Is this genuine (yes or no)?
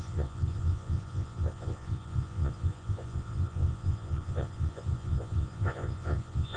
no